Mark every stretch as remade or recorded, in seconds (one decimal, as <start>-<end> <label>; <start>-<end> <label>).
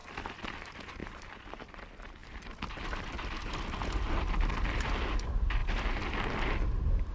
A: 0.0-1.0 recorded; 1.0-1.7 remade; 1.7-2.2 recorded; 2.2-4.9 remade; 4.9-7.1 recorded